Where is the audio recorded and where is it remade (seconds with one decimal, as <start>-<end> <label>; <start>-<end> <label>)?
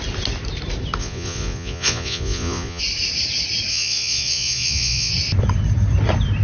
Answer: 0.0-1.0 recorded; 1.0-2.8 remade; 2.8-3.7 recorded; 3.7-5.1 remade; 5.1-6.4 recorded